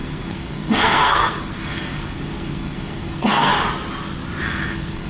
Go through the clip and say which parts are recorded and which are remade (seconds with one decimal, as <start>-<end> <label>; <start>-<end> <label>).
0.0-3.5 remade; 3.5-4.4 recorded; 4.4-5.1 remade